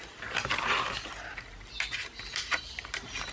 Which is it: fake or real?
fake